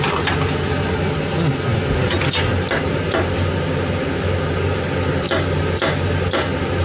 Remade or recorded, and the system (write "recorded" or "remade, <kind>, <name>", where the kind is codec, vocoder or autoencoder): recorded